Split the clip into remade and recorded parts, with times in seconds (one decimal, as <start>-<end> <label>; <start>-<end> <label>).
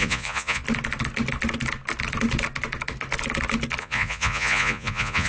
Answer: 0.0-0.6 remade; 0.6-3.8 recorded; 3.8-5.3 remade